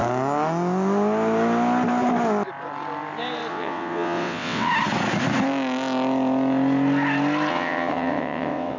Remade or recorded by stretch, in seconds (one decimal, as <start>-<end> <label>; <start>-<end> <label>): 0.0-3.5 recorded; 3.5-4.7 remade; 4.7-7.5 recorded; 7.5-8.8 remade